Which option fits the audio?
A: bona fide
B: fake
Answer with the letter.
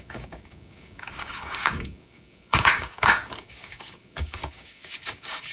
B